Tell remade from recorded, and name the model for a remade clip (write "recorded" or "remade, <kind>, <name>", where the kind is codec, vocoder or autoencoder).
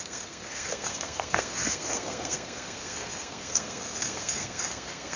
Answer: remade, codec, SNAC